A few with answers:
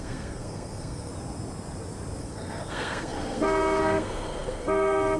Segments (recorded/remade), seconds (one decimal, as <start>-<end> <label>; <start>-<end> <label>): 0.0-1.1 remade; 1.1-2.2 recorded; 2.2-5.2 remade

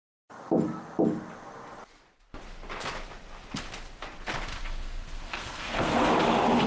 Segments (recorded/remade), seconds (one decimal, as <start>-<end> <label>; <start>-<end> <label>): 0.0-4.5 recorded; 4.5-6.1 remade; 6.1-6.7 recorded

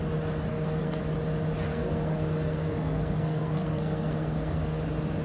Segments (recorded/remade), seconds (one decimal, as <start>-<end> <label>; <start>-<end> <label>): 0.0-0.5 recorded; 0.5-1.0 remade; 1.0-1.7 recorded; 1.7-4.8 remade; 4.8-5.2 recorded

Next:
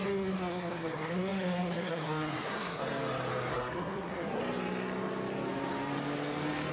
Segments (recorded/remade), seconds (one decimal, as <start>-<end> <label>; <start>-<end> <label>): 0.0-2.8 remade; 2.8-3.5 recorded; 3.5-4.4 remade; 4.4-6.7 recorded

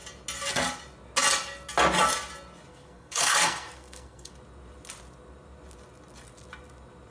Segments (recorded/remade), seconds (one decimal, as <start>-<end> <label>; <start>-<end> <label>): 0.0-2.7 recorded; 2.7-4.3 remade; 4.3-7.1 recorded

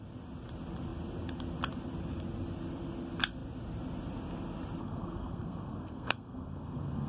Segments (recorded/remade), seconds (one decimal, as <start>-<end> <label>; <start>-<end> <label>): 0.0-4.8 recorded; 4.8-7.1 remade

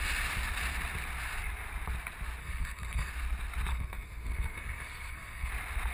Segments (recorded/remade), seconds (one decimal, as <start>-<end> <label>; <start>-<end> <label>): 0.0-2.4 recorded; 2.4-3.1 remade; 3.1-3.7 recorded; 3.7-5.5 remade; 5.5-5.9 recorded